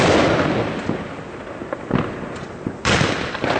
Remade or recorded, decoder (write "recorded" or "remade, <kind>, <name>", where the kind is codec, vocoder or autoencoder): recorded